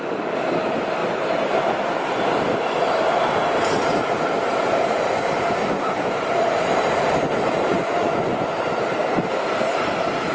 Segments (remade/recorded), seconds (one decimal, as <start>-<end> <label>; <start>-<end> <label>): 0.0-7.7 recorded; 7.7-8.6 remade; 8.6-10.3 recorded